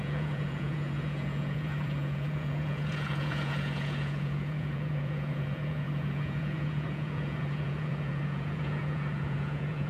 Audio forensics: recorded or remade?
remade